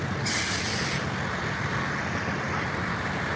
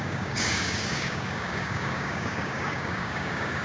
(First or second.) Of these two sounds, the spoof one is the second